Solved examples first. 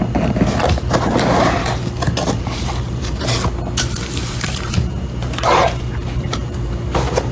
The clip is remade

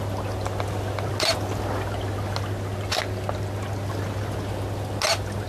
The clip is recorded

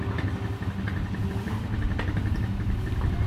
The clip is recorded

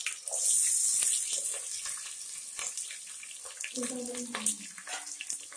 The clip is recorded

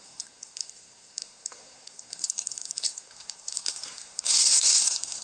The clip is remade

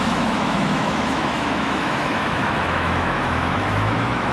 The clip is remade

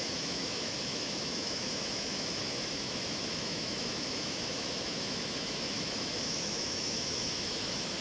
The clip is remade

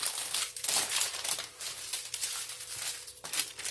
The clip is recorded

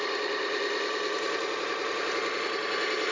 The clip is remade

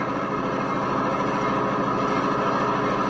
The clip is recorded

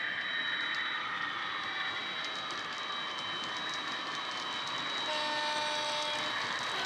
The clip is recorded